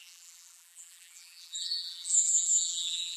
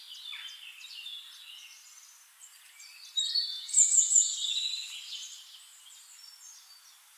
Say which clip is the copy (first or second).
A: first